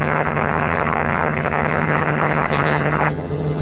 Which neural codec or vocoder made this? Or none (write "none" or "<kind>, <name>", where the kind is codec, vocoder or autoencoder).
vocoder, HiFi-GAN